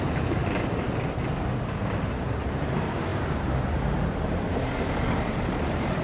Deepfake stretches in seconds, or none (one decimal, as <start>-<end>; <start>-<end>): 0.0-0.4; 1.8-3.1; 5.3-6.0